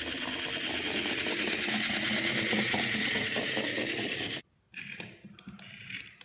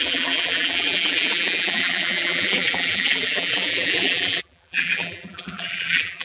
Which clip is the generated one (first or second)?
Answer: second